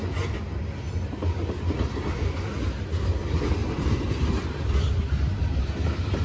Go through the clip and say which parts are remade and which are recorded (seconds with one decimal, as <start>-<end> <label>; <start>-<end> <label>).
0.0-6.2 recorded